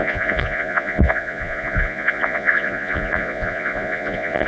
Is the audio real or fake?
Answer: fake